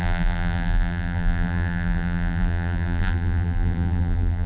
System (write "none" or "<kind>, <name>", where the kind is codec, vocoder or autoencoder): vocoder, BigVGAN v2